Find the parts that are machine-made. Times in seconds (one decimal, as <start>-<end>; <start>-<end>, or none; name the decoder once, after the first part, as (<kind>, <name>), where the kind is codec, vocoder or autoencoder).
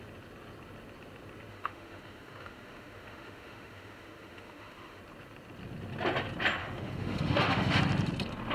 1.5-5.0 (autoencoder, DAC-VAE); 6.6-7.8